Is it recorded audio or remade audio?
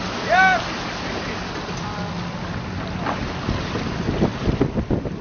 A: recorded